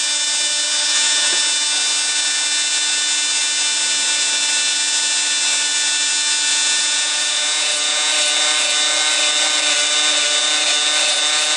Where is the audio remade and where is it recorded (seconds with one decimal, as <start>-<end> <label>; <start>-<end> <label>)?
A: 0.0-0.9 recorded; 0.9-1.4 remade; 1.4-6.5 recorded; 6.5-8.1 remade; 8.1-11.6 recorded